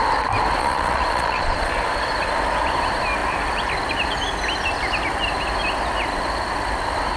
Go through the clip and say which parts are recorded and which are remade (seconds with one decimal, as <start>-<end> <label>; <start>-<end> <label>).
0.0-0.6 recorded; 0.6-1.7 remade; 1.7-7.2 recorded